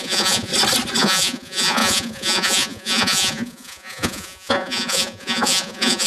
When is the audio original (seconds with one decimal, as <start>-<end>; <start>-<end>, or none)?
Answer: 0.5-1.0